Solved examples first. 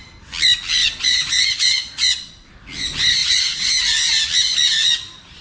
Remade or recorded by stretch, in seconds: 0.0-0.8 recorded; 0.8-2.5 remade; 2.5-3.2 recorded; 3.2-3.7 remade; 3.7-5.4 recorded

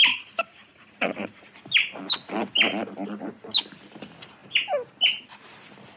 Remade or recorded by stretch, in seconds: 0.0-0.5 recorded; 0.5-1.5 remade; 1.5-6.0 recorded

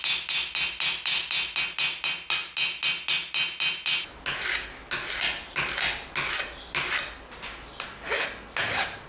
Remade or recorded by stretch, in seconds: 0.0-9.1 recorded

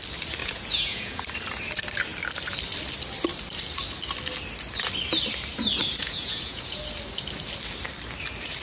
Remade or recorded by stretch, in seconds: 0.0-0.4 recorded; 0.4-1.2 remade; 1.2-6.0 recorded; 6.0-6.8 remade; 6.8-8.6 recorded